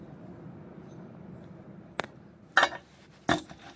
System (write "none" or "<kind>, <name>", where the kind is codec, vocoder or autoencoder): none